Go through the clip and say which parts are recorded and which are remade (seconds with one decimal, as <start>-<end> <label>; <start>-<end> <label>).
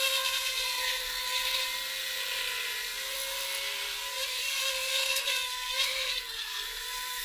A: 0.0-1.6 remade; 1.6-4.3 recorded; 4.3-7.2 remade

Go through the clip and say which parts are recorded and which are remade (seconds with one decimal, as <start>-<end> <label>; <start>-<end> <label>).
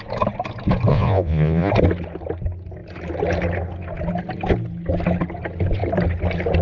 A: 0.0-0.9 recorded; 0.9-1.7 remade; 1.7-6.6 recorded